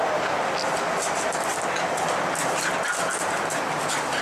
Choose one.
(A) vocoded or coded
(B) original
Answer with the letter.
B